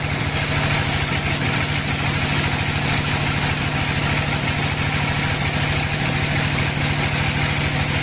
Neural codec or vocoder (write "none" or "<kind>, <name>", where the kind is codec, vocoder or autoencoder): none